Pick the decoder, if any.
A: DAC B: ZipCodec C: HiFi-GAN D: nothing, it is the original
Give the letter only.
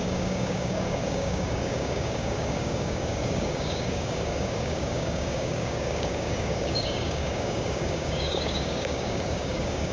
A